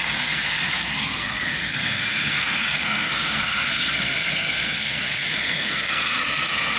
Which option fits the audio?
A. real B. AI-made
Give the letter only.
B